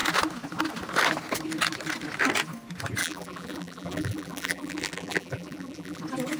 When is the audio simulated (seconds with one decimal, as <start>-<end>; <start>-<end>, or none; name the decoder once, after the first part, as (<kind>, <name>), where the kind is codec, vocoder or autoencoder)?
3.0-6.0 (vocoder, BigVGAN v2)